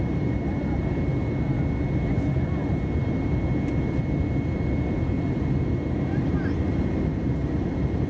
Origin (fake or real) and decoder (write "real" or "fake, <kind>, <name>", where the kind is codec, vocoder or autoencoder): real